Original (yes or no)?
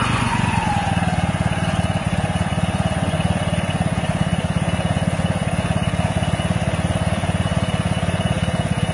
no